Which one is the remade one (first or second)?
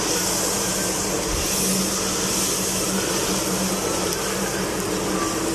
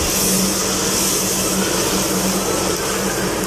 first